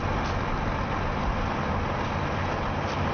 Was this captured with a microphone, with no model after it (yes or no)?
yes